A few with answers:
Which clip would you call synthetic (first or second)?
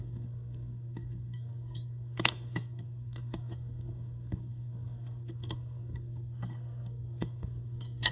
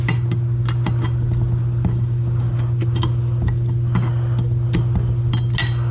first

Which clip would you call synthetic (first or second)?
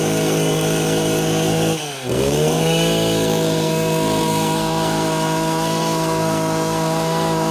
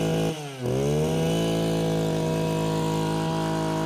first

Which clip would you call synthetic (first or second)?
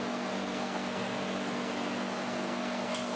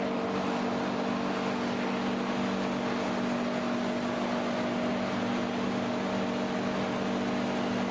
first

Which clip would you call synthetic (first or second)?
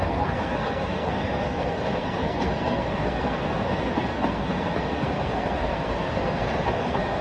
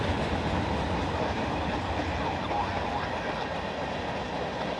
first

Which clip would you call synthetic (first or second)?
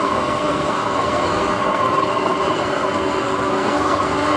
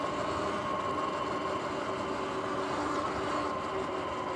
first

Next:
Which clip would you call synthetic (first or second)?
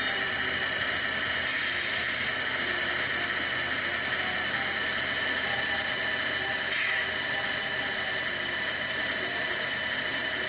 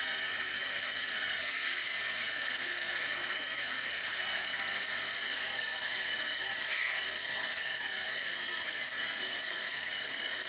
second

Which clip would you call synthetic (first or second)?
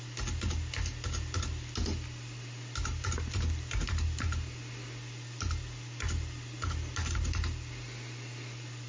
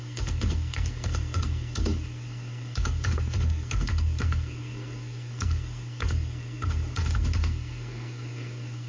second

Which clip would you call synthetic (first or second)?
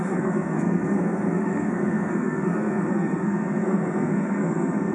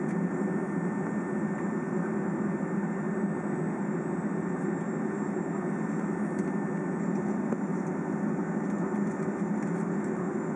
first